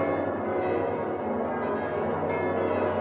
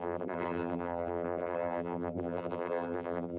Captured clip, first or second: first